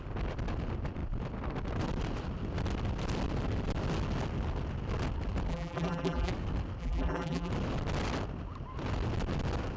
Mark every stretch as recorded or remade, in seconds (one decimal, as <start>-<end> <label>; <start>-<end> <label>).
0.0-5.5 recorded; 5.5-6.3 remade; 6.3-6.8 recorded; 6.8-7.5 remade; 7.5-9.8 recorded